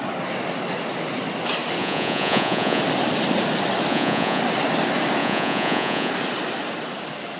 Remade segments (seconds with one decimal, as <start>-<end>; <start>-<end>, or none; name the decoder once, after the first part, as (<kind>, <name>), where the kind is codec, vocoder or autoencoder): 1.8-2.8 (vocoder, Vocos); 3.9-4.4; 5.2-6.1